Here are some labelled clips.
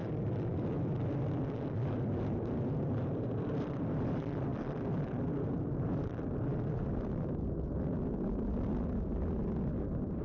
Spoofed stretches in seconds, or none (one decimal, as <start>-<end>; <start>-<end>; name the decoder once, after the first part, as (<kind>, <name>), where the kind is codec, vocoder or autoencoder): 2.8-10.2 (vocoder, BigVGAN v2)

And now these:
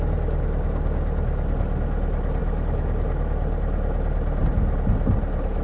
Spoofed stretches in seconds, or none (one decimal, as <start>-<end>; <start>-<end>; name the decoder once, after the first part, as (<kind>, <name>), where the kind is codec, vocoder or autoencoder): none

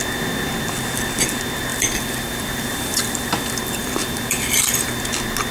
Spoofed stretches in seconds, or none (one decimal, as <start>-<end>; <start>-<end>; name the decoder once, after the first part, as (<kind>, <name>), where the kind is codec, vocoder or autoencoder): 1.7-5.0 (vocoder, BigVGAN v2)

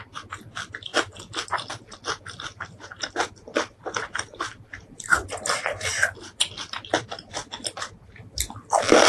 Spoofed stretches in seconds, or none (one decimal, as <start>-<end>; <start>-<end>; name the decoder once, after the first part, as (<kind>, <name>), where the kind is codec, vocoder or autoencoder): none